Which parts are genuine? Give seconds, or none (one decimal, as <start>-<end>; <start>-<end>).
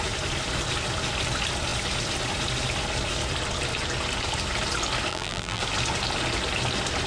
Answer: 0.0-5.1; 5.6-7.1